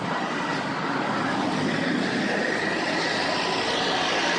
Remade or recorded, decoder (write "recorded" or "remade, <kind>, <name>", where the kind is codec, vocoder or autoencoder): recorded